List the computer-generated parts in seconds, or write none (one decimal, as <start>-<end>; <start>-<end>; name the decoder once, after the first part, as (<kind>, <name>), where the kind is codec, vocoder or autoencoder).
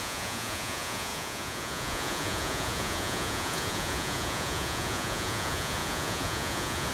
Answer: 0.0-6.9 (vocoder, Vocos)